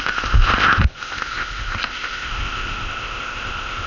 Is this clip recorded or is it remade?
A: remade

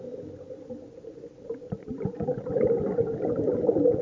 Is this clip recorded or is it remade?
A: recorded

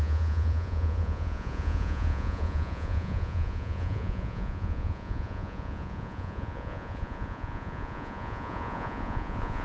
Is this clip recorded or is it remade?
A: remade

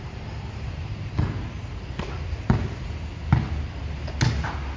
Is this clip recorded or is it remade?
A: recorded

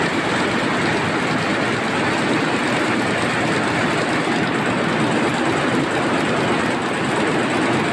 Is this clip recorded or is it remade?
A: recorded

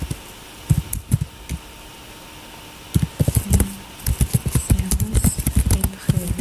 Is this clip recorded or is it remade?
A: recorded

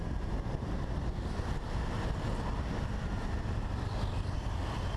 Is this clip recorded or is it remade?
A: remade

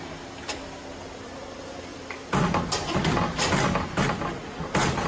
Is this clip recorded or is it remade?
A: recorded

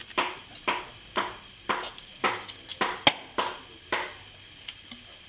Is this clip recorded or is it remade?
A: recorded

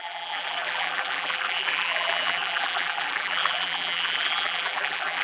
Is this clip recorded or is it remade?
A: remade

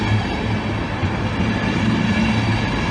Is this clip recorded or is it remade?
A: recorded